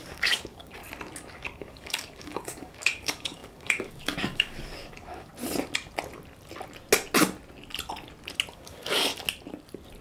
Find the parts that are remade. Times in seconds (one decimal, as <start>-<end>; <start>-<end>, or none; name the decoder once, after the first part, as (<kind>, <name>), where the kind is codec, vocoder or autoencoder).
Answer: 0.0-0.8 (codec, DAC); 1.3-5.3; 8.5-9.1